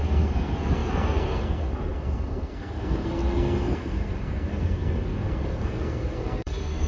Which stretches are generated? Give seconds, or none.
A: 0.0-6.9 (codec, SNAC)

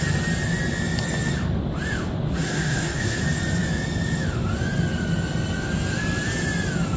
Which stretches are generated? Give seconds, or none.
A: 2.3-3.2 (codec, SNAC)

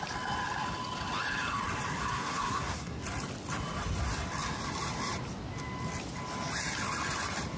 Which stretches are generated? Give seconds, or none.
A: 2.0-3.0 (codec, SNAC)

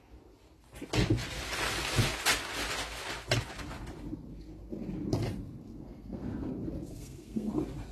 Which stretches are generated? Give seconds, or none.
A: 5.7-6.5 (codec, SNAC); 6.9-7.5

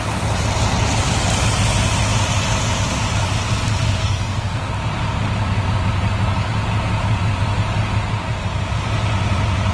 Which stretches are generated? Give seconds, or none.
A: 4.0-4.7 (codec, SNAC)